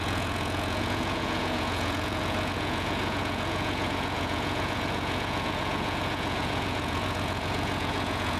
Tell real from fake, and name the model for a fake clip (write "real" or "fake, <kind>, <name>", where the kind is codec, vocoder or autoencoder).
fake, vocoder, Vocos